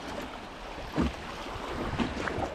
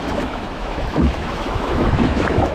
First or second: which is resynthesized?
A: second